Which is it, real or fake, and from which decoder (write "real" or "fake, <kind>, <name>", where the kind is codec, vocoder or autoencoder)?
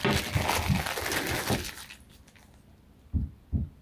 real